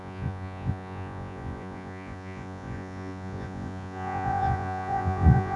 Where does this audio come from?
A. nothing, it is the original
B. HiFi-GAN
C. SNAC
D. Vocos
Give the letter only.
D